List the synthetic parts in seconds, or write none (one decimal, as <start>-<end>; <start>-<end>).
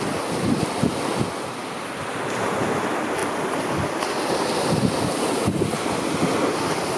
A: none